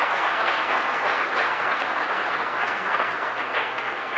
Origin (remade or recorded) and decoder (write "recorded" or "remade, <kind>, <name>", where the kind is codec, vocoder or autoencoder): remade, codec, SNAC